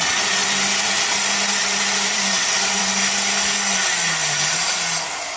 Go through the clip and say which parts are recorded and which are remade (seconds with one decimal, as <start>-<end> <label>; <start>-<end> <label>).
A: 0.0-0.4 recorded; 0.4-1.0 remade; 1.0-1.6 recorded; 1.6-2.8 remade; 2.8-5.4 recorded